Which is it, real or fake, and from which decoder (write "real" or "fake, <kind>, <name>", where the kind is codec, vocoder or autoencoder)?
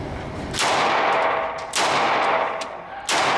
real